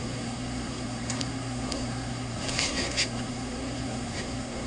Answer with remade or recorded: remade